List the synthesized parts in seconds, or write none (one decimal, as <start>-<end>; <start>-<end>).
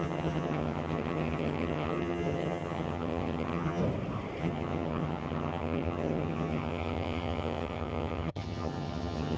0.0-3.8; 4.4-9.4